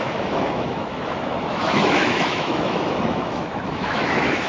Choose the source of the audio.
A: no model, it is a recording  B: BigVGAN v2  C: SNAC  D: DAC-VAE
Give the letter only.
D